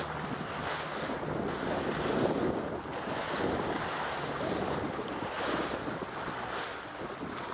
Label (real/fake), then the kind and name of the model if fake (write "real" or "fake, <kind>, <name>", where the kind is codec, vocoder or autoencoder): real